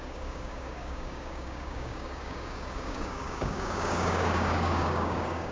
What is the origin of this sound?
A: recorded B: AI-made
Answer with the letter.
B